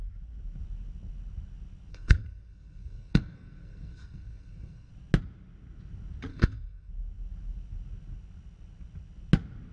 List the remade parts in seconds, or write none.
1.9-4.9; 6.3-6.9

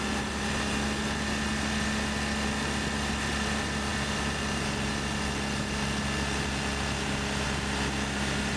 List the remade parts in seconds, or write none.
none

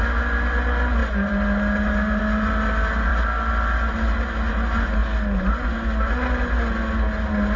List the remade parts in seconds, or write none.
none